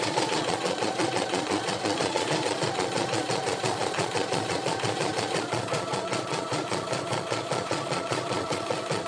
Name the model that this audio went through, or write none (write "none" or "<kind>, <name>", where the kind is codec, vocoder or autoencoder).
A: vocoder, Vocos